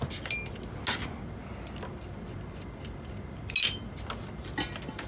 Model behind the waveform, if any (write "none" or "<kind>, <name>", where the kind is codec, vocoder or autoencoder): none